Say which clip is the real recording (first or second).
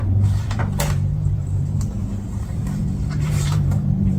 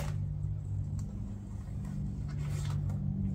second